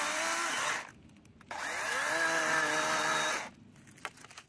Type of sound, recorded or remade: recorded